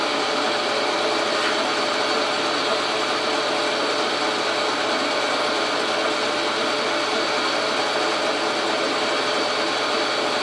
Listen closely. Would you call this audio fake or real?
real